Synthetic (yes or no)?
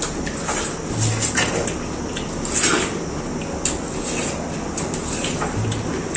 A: no